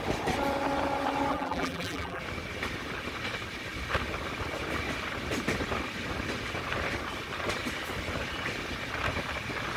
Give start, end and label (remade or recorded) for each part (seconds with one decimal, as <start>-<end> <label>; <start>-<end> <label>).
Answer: 0.0-1.3 recorded; 1.3-2.2 remade; 2.2-9.8 recorded